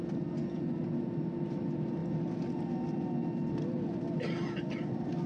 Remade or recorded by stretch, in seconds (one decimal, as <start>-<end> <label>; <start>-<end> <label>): 0.0-5.3 recorded